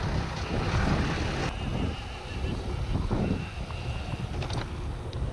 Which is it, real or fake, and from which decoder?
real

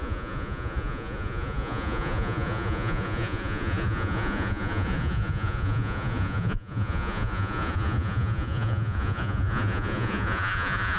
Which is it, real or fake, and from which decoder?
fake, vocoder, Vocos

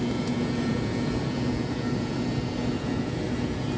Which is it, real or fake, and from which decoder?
real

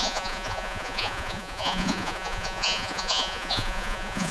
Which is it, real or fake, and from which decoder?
fake, vocoder, Vocos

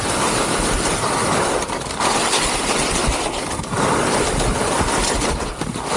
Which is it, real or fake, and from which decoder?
fake, vocoder, BigVGAN v2